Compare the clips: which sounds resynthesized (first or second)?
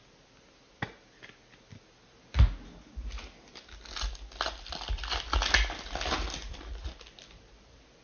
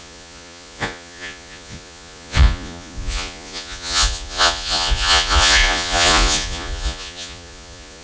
second